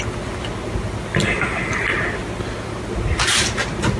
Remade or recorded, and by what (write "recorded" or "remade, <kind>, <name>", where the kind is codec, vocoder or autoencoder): recorded